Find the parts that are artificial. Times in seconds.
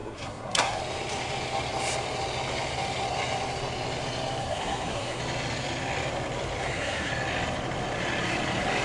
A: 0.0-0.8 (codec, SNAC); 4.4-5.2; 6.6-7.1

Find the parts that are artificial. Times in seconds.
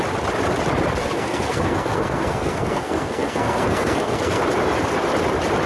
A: 1.0-4.4 (codec, SNAC)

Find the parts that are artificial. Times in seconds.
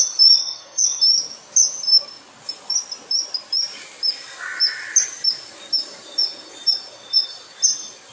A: 0.4-1.0 (codec, SNAC)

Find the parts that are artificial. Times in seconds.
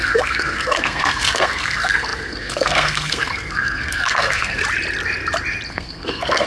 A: 0.0-4.6 (codec, SNAC); 5.7-6.5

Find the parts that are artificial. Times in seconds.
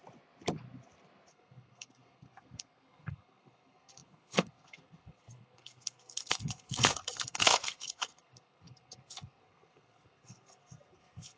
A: 1.3-11.4 (codec, SNAC)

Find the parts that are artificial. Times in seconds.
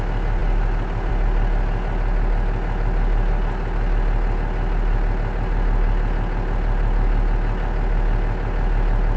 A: none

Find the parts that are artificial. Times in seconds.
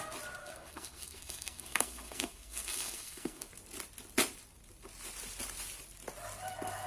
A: 0.4-3.5 (codec, SNAC)